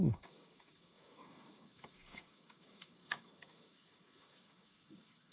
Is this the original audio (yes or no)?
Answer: no